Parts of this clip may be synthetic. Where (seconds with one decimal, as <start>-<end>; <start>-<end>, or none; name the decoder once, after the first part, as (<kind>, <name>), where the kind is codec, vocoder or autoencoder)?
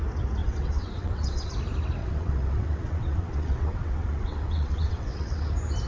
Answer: 0.4-1.5 (vocoder, WaveNeXt); 2.0-5.5